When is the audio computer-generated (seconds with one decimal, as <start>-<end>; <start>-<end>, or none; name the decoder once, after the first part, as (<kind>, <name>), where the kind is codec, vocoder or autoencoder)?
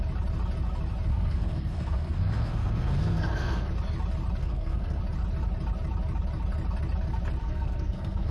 1.1-3.7 (codec, SNAC); 4.4-5.0; 7.4-8.3